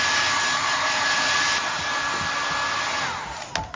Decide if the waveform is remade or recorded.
recorded